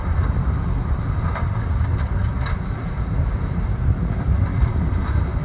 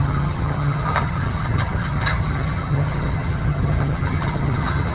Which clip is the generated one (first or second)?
second